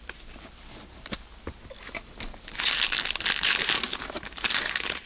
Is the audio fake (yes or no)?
no